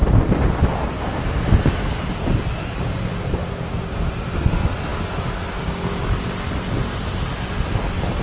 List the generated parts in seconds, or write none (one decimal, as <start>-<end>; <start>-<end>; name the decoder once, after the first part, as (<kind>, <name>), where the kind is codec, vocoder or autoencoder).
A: none

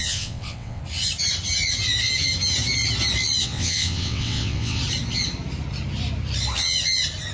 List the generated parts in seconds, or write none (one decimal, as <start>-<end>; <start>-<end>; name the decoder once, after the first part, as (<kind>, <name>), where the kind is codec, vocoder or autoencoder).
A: 0.0-0.8 (vocoder, WaveNeXt); 3.4-4.8

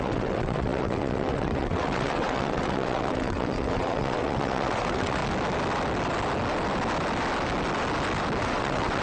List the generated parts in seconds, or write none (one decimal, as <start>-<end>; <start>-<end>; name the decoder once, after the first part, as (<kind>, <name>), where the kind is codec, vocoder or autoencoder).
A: 0.0-5.2 (vocoder, WaveNeXt); 8.4-9.0

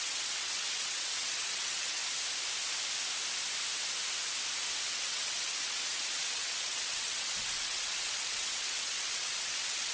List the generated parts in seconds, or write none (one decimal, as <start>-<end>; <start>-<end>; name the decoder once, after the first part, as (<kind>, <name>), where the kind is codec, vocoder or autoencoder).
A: 0.0-2.0 (vocoder, WaveNeXt); 4.9-9.9

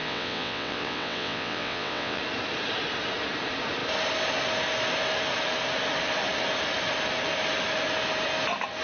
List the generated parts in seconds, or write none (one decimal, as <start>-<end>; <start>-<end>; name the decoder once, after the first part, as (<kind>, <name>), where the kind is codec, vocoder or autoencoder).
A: 0.0-2.2 (vocoder, WaveNeXt)

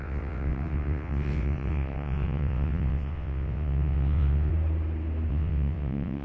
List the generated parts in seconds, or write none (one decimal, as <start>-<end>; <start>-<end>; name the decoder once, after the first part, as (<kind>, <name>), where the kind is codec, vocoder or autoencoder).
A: 0.0-4.5 (vocoder, WaveNeXt); 5.3-6.2

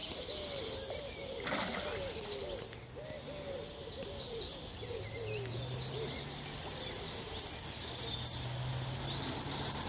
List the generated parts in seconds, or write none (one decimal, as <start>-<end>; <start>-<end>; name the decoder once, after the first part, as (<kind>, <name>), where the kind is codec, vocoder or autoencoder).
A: none

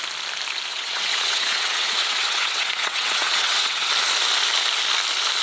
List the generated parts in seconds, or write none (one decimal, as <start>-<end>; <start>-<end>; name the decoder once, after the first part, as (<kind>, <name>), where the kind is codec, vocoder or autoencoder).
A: 0.7-3.9 (vocoder, WaveNeXt)